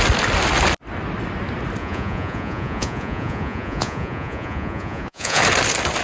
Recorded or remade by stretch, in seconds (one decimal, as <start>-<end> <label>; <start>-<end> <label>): 0.0-1.8 recorded; 1.8-5.4 remade; 5.4-6.0 recorded